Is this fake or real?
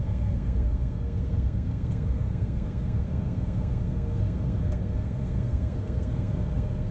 fake